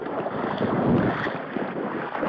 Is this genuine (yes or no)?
yes